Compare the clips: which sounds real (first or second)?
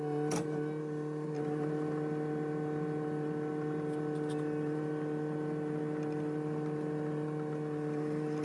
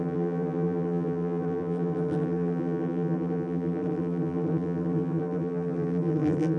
first